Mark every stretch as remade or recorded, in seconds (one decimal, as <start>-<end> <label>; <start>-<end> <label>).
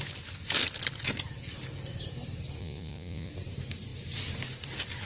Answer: 0.0-2.6 recorded; 2.6-3.3 remade; 3.3-5.1 recorded